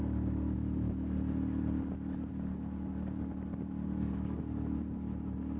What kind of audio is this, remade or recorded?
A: recorded